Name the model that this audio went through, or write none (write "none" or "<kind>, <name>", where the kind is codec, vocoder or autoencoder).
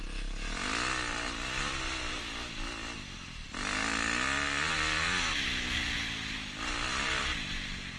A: none